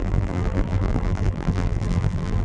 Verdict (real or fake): fake